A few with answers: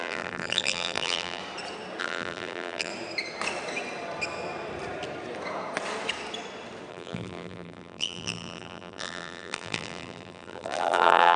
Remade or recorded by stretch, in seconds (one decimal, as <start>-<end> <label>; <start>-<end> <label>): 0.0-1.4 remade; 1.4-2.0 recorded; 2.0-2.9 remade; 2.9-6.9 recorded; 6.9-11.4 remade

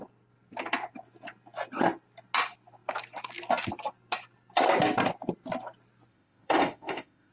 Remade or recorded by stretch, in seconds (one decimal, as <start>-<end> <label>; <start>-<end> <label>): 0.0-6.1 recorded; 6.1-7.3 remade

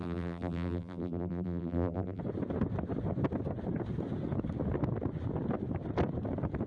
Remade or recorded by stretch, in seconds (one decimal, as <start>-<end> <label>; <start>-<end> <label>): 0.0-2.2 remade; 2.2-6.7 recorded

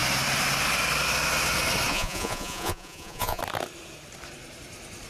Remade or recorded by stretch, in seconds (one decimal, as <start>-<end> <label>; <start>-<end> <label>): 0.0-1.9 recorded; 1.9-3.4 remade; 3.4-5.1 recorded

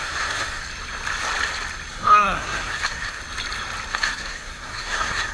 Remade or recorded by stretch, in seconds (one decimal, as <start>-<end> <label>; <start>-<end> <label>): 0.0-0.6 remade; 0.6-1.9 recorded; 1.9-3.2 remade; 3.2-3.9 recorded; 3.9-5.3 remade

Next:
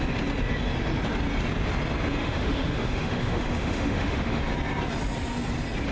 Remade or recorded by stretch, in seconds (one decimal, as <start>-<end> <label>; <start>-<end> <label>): 0.0-2.2 recorded; 2.2-4.4 remade; 4.4-5.9 recorded

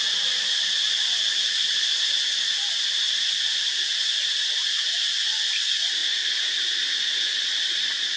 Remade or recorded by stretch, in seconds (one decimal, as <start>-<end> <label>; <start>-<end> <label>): 0.0-8.2 recorded